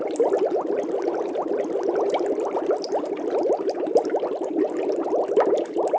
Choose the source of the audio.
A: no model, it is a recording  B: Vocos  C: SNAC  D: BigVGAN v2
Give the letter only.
A